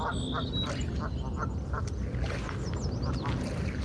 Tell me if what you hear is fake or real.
real